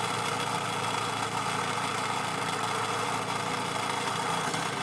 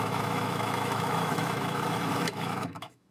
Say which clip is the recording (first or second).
first